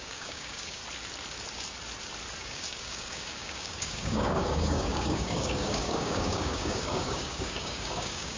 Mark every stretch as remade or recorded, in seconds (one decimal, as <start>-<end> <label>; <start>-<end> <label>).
0.0-0.8 remade; 0.8-2.4 recorded; 2.4-8.4 remade